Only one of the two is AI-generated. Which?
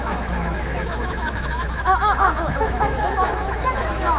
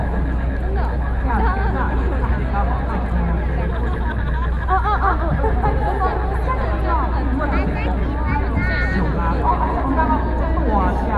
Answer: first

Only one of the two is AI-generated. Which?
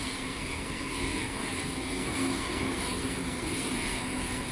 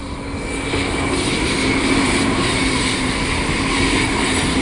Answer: first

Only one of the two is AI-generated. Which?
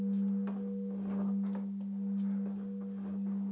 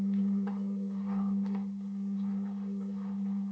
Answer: second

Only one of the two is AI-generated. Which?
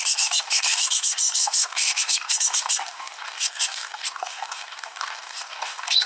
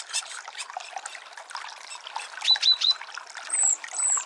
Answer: first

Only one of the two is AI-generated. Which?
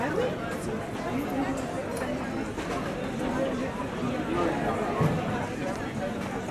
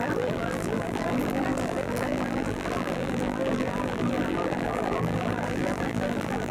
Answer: second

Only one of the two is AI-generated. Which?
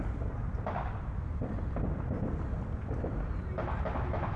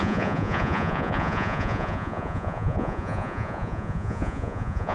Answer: second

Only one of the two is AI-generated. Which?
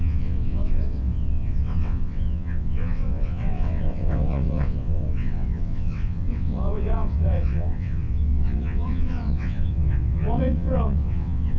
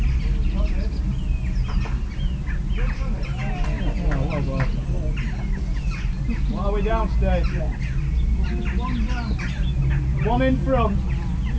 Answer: first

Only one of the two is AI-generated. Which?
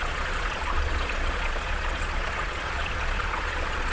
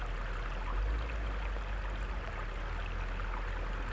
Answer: first